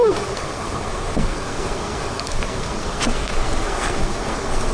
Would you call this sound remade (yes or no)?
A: yes